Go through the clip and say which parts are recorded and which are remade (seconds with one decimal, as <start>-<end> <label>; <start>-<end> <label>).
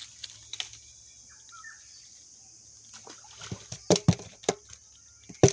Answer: 0.0-5.5 recorded